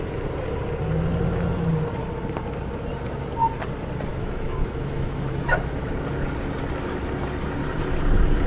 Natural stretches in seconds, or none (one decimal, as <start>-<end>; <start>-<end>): 0.0-4.1; 5.9-8.5